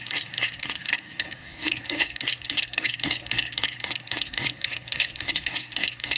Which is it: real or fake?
fake